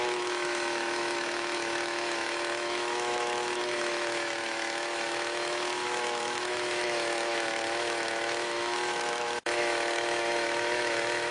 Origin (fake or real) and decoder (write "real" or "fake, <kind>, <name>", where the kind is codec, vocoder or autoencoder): fake, autoencoder, DAC-VAE